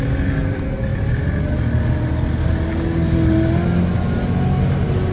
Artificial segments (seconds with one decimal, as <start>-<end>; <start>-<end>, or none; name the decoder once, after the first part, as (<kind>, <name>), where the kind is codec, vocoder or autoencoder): none